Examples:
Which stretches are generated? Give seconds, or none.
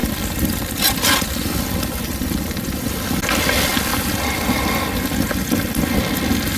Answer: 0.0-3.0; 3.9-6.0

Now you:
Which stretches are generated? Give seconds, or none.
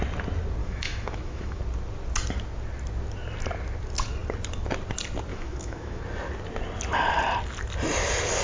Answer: 0.6-1.6; 5.3-6.0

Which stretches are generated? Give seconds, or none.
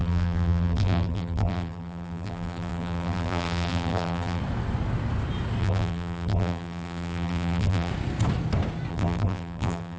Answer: 0.0-4.4; 5.6-7.9; 8.9-10.0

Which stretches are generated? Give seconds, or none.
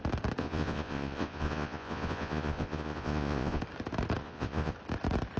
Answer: 0.4-3.6; 4.2-4.7